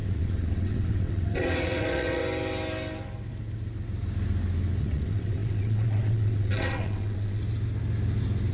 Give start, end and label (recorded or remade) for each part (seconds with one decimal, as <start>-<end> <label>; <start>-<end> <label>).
0.0-2.2 remade; 2.2-4.8 recorded; 4.8-7.4 remade; 7.4-8.5 recorded